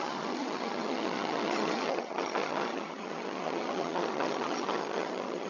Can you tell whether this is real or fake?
fake